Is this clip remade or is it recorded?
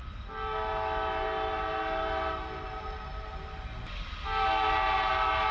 recorded